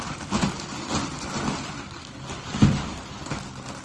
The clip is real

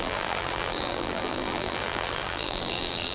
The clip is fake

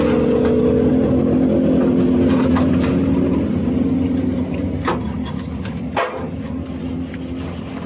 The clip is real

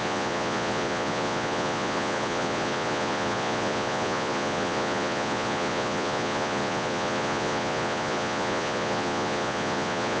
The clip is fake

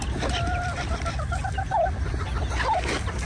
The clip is real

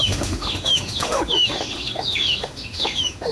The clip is fake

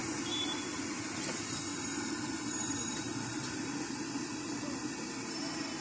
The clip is real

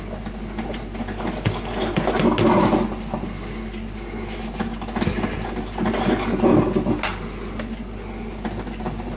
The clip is real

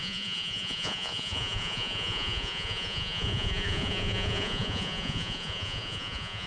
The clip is fake